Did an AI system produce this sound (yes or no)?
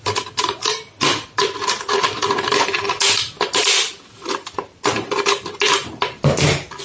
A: no